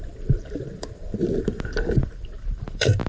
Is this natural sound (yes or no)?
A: no